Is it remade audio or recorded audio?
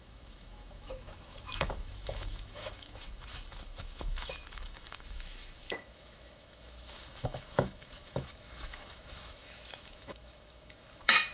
remade